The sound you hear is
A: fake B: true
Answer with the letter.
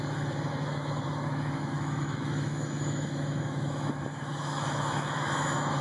A